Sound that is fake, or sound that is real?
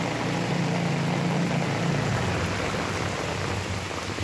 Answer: real